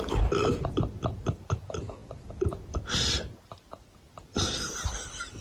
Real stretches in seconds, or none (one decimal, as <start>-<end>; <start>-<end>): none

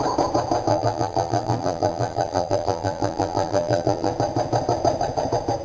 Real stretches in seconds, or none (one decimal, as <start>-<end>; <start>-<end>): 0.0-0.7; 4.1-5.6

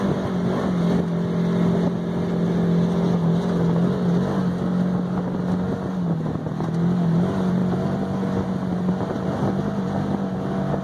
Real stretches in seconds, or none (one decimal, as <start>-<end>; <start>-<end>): 0.0-7.6; 8.9-10.8

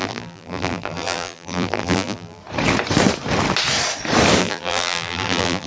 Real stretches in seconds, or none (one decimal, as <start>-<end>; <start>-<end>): 2.4-4.4

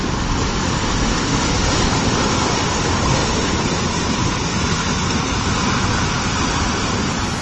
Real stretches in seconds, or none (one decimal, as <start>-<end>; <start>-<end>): 0.0-3.2; 5.4-7.4